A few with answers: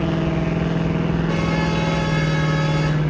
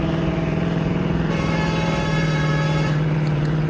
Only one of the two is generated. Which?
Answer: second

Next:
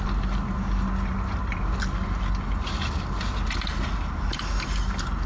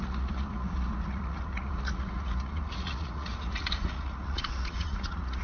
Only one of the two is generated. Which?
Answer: second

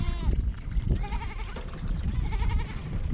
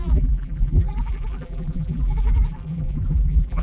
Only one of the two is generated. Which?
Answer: second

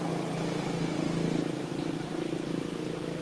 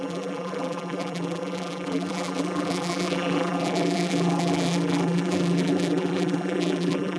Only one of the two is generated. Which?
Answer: second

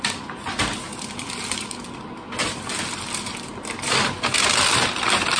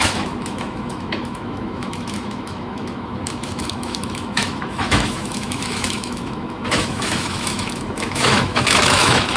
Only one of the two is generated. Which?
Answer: second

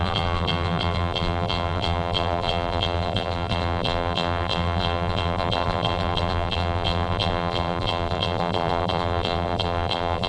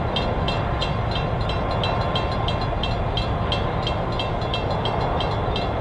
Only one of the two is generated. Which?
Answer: first